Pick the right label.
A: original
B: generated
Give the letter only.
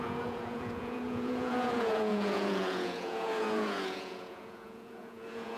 B